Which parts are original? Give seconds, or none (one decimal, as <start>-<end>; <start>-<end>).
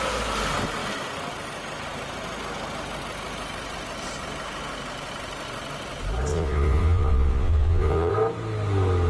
0.0-6.3; 8.1-9.1